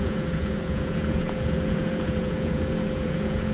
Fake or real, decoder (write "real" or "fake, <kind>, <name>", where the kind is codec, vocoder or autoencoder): fake, vocoder, Vocos